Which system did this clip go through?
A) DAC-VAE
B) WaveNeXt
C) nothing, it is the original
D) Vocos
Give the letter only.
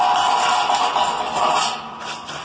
C